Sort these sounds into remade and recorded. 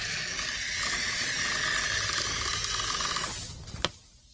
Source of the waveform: recorded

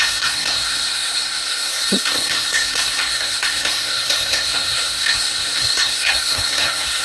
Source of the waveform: remade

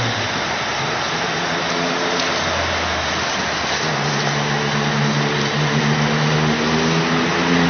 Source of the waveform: recorded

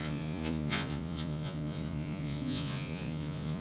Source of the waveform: remade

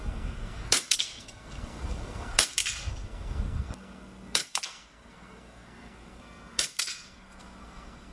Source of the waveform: remade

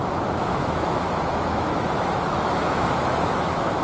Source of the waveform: remade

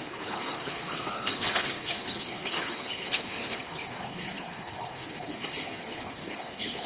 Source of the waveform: remade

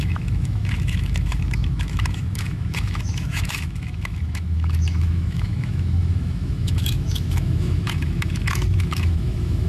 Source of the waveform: remade